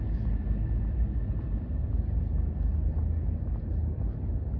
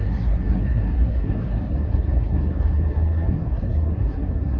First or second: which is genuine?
first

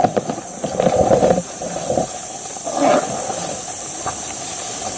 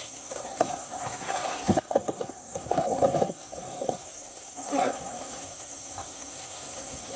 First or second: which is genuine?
first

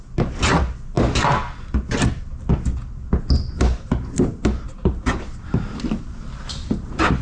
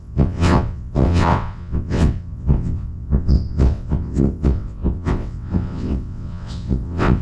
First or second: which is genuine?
first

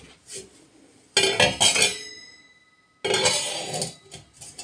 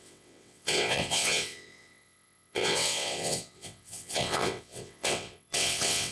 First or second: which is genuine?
first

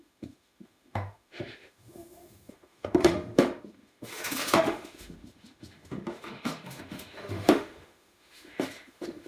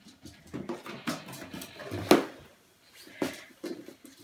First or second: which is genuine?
second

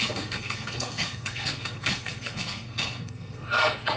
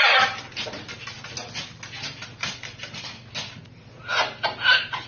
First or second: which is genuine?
second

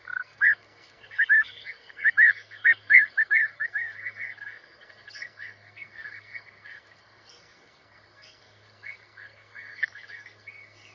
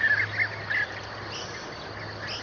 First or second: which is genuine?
second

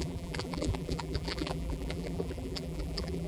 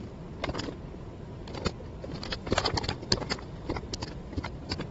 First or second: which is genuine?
second